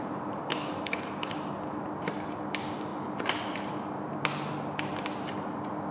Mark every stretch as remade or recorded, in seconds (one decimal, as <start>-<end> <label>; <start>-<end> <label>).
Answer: 0.0-0.4 recorded; 0.4-1.5 remade; 1.5-5.9 recorded